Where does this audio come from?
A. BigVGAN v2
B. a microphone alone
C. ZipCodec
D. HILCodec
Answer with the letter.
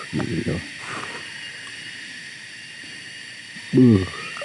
B